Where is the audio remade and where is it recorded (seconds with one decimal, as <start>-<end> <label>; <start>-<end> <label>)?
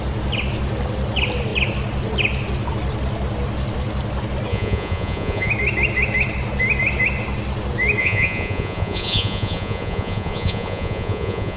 0.0-4.5 recorded; 4.5-5.5 remade; 5.5-8.0 recorded; 8.0-11.6 remade